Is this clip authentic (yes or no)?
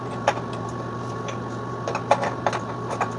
yes